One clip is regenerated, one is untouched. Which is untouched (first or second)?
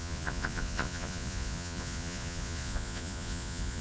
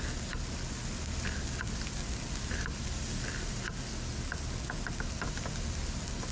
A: second